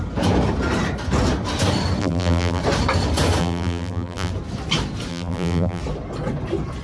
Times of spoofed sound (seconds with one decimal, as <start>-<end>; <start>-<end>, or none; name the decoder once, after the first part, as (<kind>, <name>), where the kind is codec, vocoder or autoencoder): 2.0-2.6 (vocoder, BigVGAN v2); 3.4-4.3; 5.1-5.8

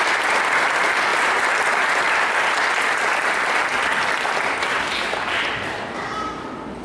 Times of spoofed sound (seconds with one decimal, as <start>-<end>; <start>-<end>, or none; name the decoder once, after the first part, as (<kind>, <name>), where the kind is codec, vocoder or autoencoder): none

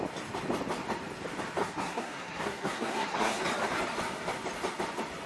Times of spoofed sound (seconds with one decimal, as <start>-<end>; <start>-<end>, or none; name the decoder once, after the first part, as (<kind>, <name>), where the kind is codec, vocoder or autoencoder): 1.6-3.4 (codec, SNAC)

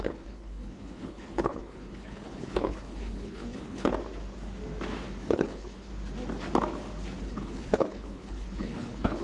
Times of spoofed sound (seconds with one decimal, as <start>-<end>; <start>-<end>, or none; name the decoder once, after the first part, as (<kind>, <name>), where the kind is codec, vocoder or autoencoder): 0.0-3.9 (codec, HILCodec); 5.2-5.9; 7.2-9.2

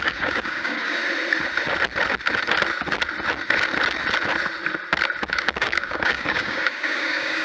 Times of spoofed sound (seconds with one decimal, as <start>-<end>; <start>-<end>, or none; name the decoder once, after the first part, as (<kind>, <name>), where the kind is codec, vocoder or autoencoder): 0.0-1.0 (codec, DAC); 5.3-7.4

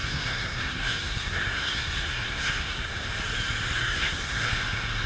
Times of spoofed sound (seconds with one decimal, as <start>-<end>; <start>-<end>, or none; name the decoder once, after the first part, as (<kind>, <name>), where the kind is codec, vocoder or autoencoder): 0.0-3.1 (codec, SNAC); 3.8-4.5